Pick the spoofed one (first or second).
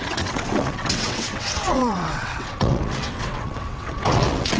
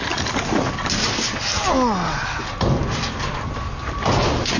first